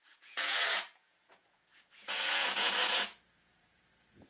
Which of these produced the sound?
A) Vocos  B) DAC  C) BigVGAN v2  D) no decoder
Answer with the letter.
A